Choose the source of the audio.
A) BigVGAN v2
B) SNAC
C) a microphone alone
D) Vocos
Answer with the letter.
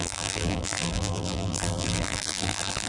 A